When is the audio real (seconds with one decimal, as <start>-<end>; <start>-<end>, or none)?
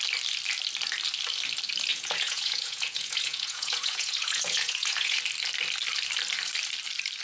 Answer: 0.0-1.9; 5.2-7.2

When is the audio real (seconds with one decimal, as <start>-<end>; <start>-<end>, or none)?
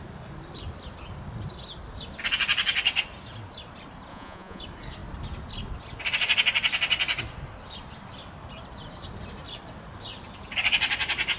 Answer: 0.0-4.1; 4.6-11.4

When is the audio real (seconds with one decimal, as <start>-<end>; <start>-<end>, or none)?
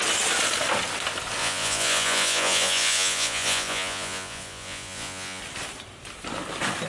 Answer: 0.0-1.4; 5.4-6.9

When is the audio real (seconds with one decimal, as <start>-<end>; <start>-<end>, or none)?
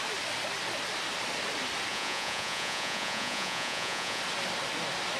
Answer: 0.0-1.9; 4.2-5.2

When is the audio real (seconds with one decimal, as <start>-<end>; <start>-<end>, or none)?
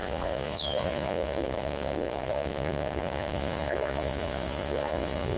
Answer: none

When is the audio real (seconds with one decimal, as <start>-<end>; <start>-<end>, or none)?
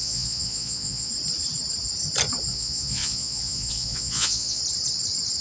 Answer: 1.1-2.5; 4.6-5.4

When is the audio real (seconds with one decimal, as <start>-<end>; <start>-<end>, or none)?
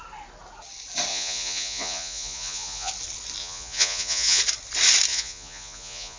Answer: 0.0-1.1; 2.9-3.4; 4.4-5.1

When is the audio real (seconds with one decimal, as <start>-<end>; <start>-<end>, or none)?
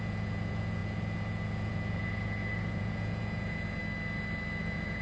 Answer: 3.8-4.6